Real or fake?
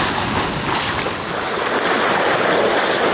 real